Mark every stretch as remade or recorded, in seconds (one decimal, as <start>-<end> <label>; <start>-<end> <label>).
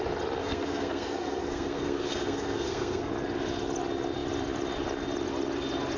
0.0-0.4 recorded; 0.4-3.1 remade; 3.1-6.0 recorded